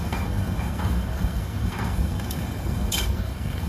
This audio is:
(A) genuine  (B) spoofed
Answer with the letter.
B